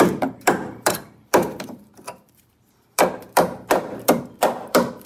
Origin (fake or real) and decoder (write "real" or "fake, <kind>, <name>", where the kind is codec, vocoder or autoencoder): fake, vocoder, BigVGAN v2